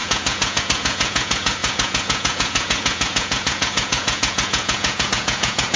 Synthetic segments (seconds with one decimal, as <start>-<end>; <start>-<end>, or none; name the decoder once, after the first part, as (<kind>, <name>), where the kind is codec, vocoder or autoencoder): 0.0-5.8 (vocoder, Vocos)